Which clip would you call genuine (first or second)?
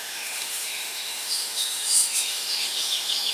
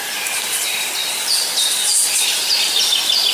second